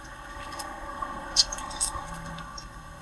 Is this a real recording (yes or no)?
no